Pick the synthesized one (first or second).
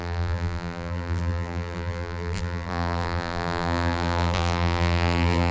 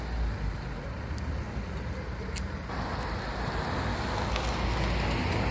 first